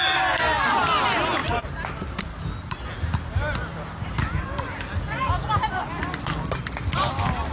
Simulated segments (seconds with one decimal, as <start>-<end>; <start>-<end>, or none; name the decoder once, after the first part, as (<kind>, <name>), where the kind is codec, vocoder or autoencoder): 1.4-2.2 (vocoder, BigVGAN v2)